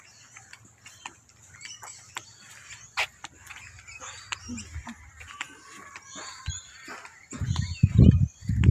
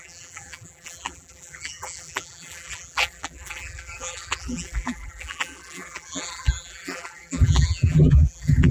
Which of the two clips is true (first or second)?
first